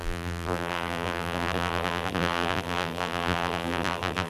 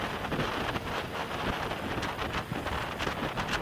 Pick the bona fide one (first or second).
second